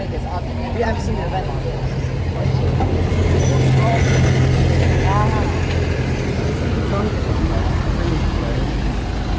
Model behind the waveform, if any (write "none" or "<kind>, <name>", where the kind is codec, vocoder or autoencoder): none